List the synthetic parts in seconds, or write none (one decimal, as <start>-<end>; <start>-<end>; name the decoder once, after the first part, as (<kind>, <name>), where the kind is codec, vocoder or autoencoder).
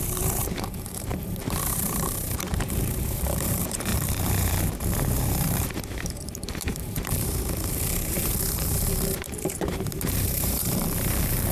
0.0-11.5 (vocoder, BigVGAN v2)